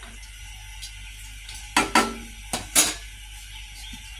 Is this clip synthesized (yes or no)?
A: no